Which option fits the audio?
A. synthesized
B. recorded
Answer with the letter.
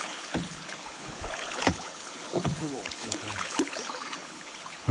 A